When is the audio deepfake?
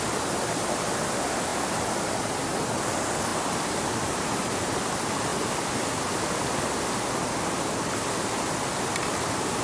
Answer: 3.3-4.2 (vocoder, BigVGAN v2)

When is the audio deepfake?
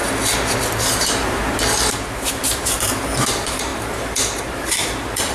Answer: 0.8-1.4 (vocoder, BigVGAN v2); 1.9-5.3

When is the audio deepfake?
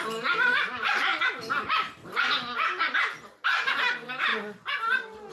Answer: 0.0-1.1 (vocoder, BigVGAN v2); 3.7-4.3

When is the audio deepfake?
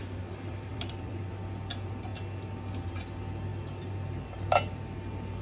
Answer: 0.0-1.1 (vocoder, BigVGAN v2)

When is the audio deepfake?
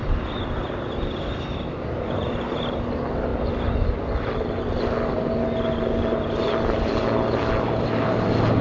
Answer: 0.0-2.8 (vocoder, BigVGAN v2)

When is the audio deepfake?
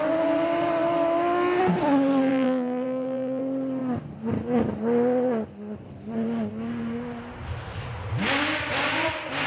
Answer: 2.3-3.4 (vocoder, BigVGAN v2)